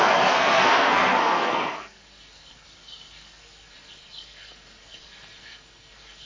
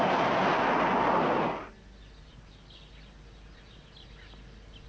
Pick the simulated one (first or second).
first